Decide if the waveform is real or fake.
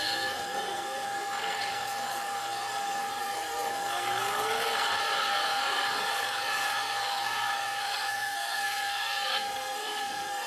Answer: fake